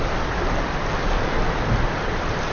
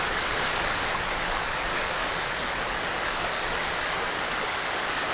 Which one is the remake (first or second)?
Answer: second